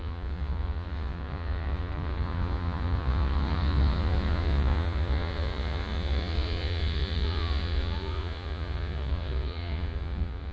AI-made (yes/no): yes